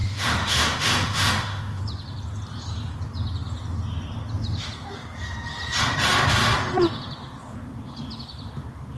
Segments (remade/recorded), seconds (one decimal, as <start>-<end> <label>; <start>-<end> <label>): 0.0-1.8 remade; 1.8-9.0 recorded